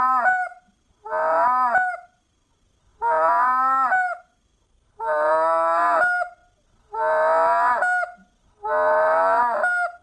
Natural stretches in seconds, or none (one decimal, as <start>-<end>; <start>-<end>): 0.0-10.0

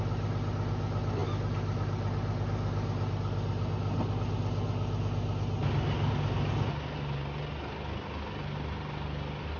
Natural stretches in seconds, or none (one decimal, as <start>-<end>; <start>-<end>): 0.0-9.6

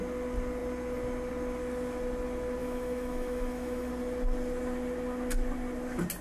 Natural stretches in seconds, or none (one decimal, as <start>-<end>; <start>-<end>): 0.0-2.6; 3.9-6.2

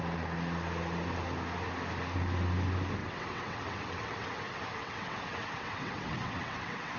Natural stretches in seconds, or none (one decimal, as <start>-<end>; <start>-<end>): 0.0-3.0

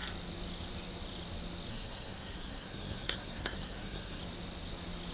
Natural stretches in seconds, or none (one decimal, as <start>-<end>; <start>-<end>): 0.0-1.7; 4.2-5.1